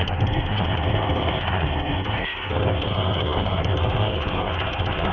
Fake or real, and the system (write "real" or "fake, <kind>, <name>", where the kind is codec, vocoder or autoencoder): fake, codec, SNAC